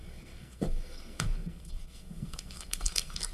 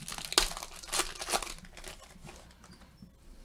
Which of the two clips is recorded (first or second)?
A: second